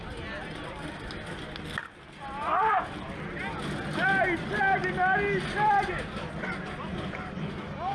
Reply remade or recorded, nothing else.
recorded